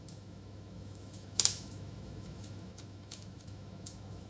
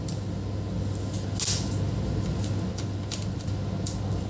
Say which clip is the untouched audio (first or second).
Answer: second